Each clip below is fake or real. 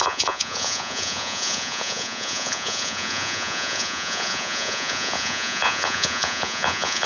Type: fake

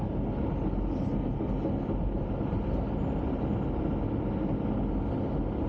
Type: real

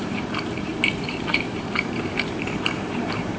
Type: fake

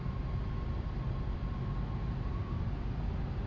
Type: real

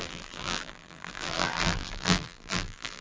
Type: fake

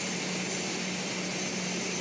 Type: real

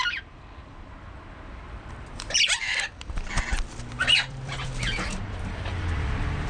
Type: fake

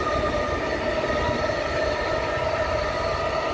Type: real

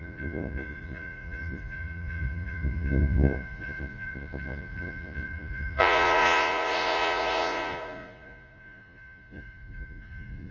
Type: fake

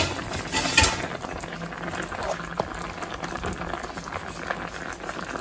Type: real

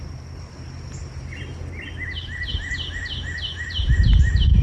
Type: real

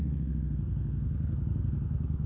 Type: fake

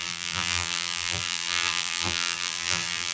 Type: fake